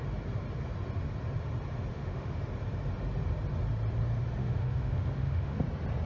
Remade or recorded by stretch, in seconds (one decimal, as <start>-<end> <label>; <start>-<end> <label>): 0.0-1.9 recorded; 1.9-2.4 remade; 2.4-4.4 recorded; 4.4-5.6 remade; 5.6-6.1 recorded